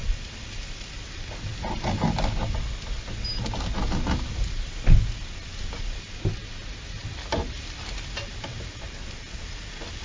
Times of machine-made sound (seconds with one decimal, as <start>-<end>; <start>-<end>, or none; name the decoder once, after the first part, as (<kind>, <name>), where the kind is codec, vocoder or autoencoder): none